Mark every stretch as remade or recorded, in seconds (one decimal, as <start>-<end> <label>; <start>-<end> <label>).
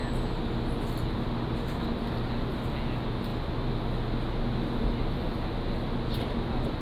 0.0-6.8 recorded